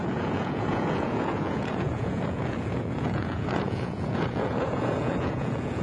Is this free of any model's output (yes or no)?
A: no